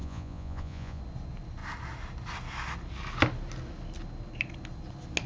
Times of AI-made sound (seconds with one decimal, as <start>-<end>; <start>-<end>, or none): 0.0-1.0